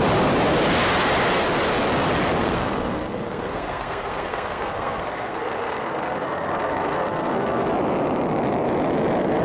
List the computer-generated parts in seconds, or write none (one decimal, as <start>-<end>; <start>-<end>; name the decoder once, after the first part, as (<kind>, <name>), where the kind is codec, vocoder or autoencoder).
2.4-7.7 (codec, SNAC)